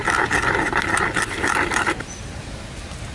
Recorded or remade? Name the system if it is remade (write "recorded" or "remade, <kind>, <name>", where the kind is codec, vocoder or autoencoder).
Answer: recorded